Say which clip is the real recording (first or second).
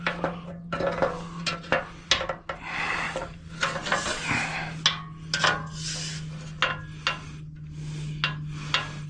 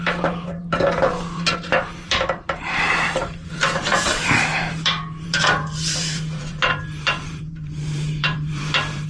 first